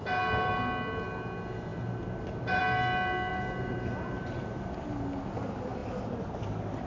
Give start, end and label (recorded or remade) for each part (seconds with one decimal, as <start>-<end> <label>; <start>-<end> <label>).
0.0-3.3 recorded; 3.3-4.6 remade; 4.6-6.9 recorded

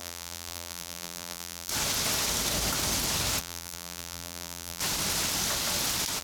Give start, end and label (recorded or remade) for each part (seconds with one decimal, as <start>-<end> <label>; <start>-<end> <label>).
0.0-1.7 remade; 1.7-3.4 recorded; 3.4-4.8 remade; 4.8-6.2 recorded